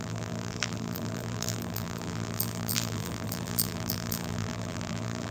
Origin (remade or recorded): remade